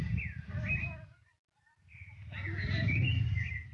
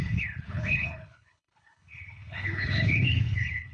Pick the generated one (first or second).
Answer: second